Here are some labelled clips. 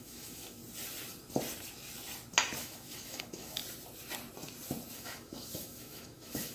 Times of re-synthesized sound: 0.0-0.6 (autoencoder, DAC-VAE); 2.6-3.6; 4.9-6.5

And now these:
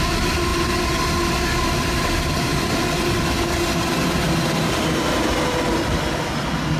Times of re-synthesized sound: none

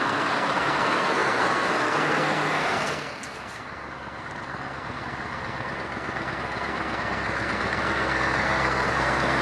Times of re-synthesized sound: 0.0-9.4 (codec, SNAC)

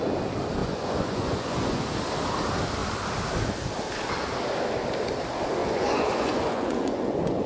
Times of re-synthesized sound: 0.6-1.8 (vocoder, Vocos); 5.6-7.5